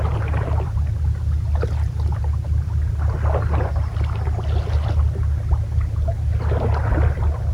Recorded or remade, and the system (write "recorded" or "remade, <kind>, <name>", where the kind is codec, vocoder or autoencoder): recorded